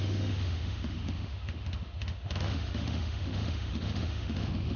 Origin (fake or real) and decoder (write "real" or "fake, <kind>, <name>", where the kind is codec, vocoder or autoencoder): fake, autoencoder, DAC-VAE